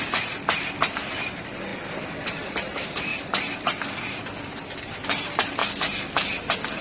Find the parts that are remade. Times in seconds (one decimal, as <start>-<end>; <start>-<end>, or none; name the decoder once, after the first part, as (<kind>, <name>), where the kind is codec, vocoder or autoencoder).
none